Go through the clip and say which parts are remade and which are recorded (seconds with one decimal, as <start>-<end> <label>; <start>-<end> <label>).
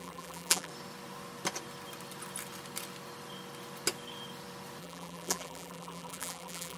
0.0-0.7 remade; 0.7-4.8 recorded; 4.8-6.8 remade